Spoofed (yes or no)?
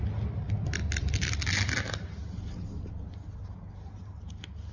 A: no